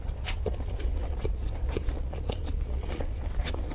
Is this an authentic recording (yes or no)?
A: no